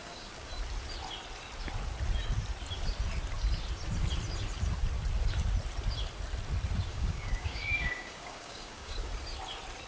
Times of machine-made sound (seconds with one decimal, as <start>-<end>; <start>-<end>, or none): 0.0-0.5; 6.9-9.1